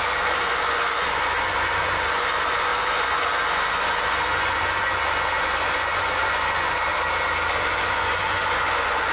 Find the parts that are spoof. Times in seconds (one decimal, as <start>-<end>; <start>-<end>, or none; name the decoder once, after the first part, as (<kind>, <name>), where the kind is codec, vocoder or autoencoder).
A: 0.0-6.9 (vocoder, Vocos); 7.5-9.1